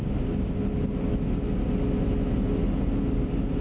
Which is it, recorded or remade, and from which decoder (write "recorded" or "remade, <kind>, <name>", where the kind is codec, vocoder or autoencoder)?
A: recorded